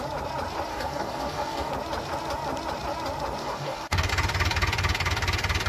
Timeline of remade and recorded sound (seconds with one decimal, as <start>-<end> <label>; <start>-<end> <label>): 0.0-0.7 recorded; 0.7-1.7 remade; 1.7-3.4 recorded; 3.4-4.1 remade; 4.1-5.7 recorded